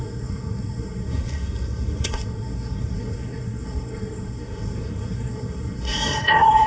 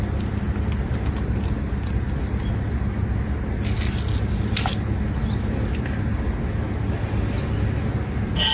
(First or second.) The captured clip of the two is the second